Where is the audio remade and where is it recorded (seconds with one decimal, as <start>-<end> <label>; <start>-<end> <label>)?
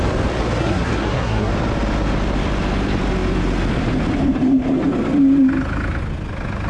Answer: 0.0-0.6 recorded; 0.6-1.5 remade; 1.5-6.7 recorded